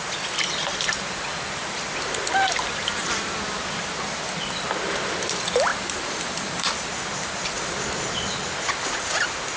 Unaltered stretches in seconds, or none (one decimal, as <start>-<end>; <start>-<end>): 0.0-5.7; 6.7-9.6